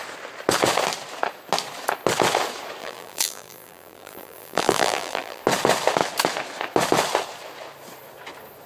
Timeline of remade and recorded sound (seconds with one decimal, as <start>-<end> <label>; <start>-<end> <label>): 0.0-2.8 recorded; 2.8-5.4 remade; 5.4-8.7 recorded